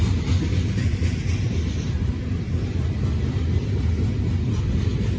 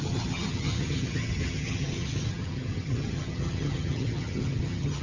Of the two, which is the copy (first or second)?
second